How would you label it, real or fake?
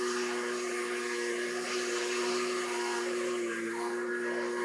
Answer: real